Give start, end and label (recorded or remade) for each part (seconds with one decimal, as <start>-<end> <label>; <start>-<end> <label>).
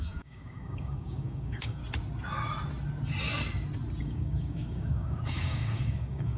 0.0-1.8 remade; 1.8-4.0 recorded; 4.0-6.4 remade